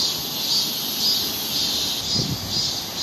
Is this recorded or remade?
recorded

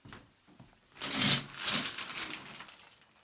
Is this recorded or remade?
recorded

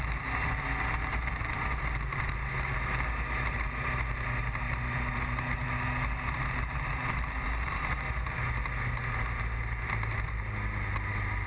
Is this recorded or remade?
recorded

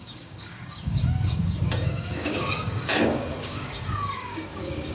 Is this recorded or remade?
remade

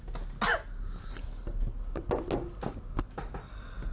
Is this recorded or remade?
recorded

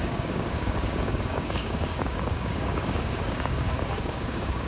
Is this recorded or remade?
remade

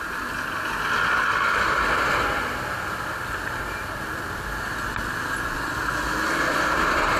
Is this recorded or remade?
recorded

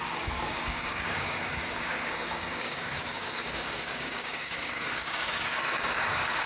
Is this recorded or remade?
remade